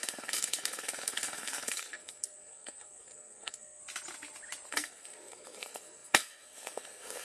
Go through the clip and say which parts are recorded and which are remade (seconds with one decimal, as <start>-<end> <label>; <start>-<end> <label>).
0.0-3.8 remade; 3.8-4.7 recorded; 4.7-7.2 remade